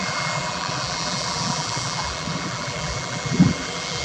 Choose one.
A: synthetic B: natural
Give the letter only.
A